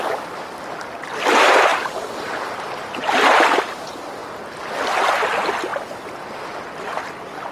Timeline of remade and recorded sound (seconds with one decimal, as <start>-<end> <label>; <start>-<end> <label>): 0.0-1.7 recorded; 1.7-3.8 remade; 3.8-5.7 recorded; 5.7-7.5 remade